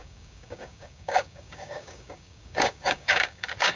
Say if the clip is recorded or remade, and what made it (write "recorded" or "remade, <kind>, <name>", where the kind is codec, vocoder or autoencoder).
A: remade, codec, DAC